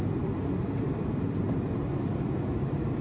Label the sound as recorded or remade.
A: recorded